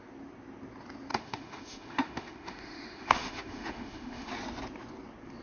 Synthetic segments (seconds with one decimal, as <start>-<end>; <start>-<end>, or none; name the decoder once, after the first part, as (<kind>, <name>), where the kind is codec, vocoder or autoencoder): 1.1-4.3 (autoencoder, DAC-VAE)